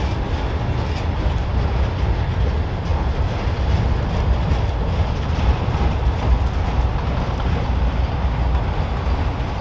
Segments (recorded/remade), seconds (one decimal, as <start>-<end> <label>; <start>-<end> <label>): 0.0-9.6 recorded